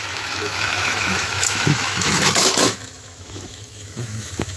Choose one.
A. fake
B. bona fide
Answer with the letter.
A